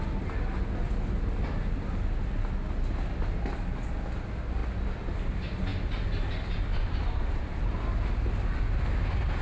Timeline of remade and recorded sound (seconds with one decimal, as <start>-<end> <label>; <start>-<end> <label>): 0.0-6.7 recorded; 6.7-7.8 remade; 7.8-9.4 recorded